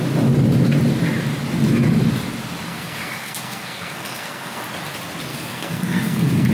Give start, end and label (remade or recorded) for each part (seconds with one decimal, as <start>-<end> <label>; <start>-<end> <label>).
0.0-2.7 recorded; 2.7-4.6 remade; 4.6-5.3 recorded; 5.3-6.5 remade